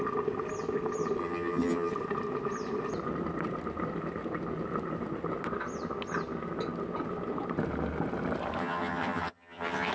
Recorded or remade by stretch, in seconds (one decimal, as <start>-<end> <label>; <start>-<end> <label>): 0.0-1.2 recorded; 1.2-1.9 remade; 1.9-8.6 recorded; 8.6-9.9 remade